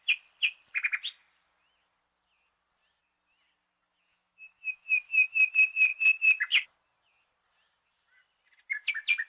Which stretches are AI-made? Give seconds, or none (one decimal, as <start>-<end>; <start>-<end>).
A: 4.1-5.5

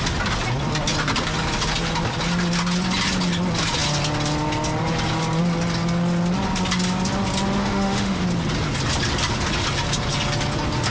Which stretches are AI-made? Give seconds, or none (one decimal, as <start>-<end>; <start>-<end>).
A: 7.6-8.2

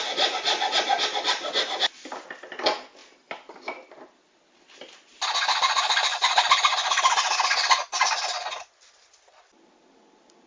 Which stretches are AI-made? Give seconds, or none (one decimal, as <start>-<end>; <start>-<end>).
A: none

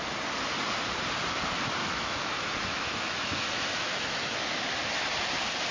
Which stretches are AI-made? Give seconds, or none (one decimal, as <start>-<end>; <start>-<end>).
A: 1.8-4.4